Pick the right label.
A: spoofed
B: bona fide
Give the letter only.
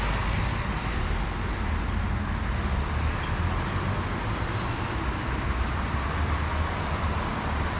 B